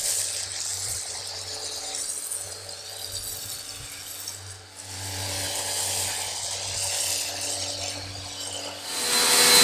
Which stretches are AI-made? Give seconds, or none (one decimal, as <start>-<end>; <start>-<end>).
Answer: 0.7-1.2